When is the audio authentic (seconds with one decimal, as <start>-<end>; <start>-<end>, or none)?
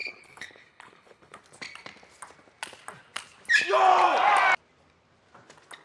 1.4-5.8